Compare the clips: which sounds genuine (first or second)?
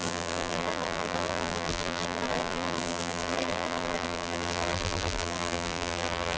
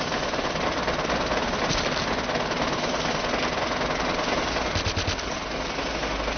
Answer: second